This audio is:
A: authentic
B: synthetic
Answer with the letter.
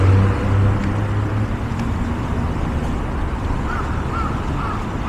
A